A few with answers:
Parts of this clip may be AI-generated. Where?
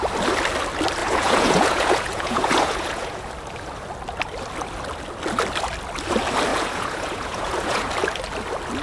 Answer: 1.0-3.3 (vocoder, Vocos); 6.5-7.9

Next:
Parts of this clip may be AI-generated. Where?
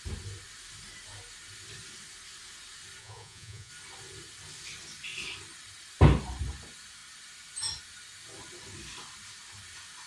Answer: 3.0-3.7 (vocoder, Vocos)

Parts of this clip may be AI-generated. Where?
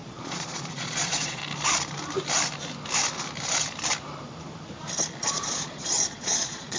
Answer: 0.0-1.4 (vocoder, Vocos); 5.2-6.8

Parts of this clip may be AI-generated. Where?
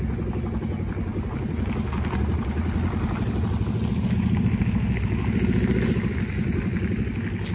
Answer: none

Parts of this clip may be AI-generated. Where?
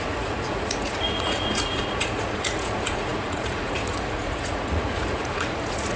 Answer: 0.0-6.0 (vocoder, Vocos)